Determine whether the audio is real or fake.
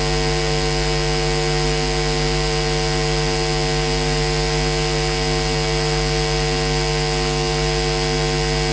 real